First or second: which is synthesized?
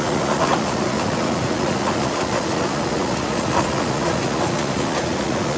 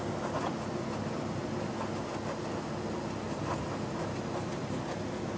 first